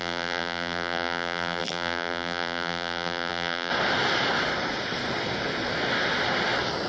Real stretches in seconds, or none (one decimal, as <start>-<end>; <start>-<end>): 3.7-6.9

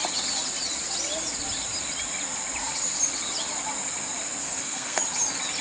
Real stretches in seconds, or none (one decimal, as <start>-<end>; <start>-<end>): 0.0-4.4; 5.0-5.6

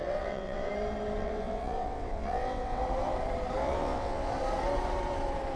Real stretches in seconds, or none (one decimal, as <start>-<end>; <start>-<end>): 0.7-1.2; 2.8-3.6; 4.3-5.6